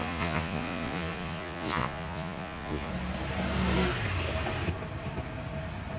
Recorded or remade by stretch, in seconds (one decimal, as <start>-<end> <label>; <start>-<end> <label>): 0.0-2.9 remade; 2.9-6.0 recorded